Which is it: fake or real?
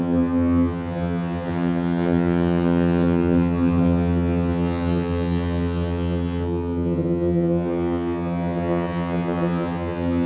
fake